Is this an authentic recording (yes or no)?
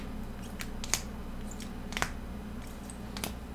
yes